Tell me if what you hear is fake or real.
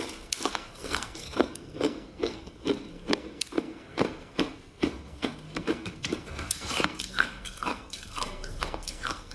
fake